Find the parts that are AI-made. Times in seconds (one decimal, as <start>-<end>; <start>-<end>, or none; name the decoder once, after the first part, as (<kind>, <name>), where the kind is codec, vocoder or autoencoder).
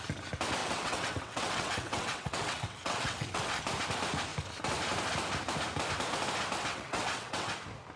0.6-3.6 (vocoder, WaveNeXt); 6.7-7.5